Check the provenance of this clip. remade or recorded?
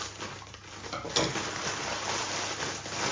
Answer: recorded